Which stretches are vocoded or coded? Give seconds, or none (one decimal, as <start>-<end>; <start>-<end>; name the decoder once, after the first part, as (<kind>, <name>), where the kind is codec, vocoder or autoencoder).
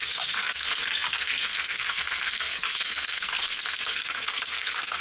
0.0-5.0 (codec, SNAC)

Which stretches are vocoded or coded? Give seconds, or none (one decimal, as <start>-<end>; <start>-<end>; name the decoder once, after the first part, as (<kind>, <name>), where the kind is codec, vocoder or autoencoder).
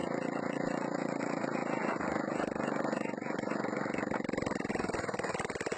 none